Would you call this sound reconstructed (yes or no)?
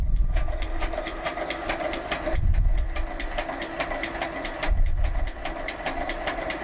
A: no